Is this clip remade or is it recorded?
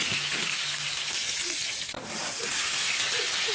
recorded